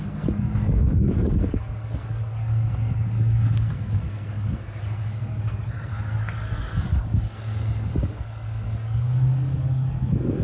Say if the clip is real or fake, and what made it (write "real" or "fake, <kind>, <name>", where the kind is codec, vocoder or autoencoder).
fake, codec, SNAC